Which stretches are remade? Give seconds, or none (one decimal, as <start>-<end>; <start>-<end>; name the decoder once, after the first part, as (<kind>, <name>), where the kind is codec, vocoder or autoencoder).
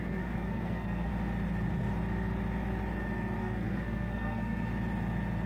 0.0-1.1 (codec, SNAC); 3.4-4.7